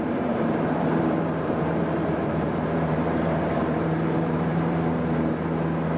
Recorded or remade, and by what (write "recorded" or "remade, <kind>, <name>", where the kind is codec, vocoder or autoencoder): remade, vocoder, BigVGAN v2